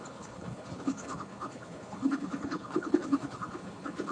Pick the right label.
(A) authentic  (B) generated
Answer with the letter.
B